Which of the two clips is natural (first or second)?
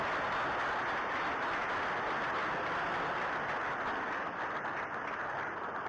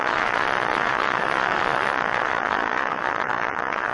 first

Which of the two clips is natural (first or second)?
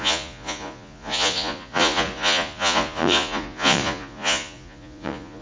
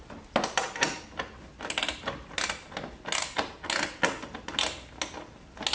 second